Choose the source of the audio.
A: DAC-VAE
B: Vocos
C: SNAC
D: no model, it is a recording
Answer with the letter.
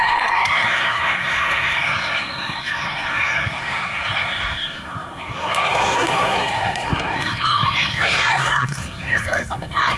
C